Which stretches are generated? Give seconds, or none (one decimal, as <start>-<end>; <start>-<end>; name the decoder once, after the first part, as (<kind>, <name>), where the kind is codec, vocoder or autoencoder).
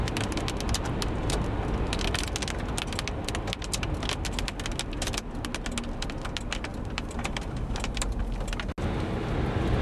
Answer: 6.7-8.2 (vocoder, BigVGAN v2)